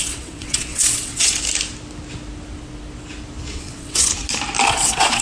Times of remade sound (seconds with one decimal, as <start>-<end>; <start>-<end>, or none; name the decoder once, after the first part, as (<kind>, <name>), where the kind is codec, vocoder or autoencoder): 0.0-1.3 (vocoder, WaveNeXt); 3.5-4.1; 4.7-5.2